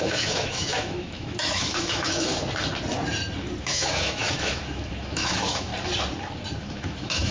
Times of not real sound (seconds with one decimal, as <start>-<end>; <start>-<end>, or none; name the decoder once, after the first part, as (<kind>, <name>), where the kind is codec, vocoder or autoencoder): 0.0-2.3 (autoencoder, DAC-VAE); 3.6-5.7; 6.6-7.3